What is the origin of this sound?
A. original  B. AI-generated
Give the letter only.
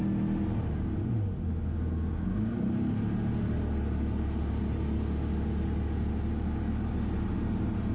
A